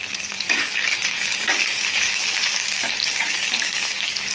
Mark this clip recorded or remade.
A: remade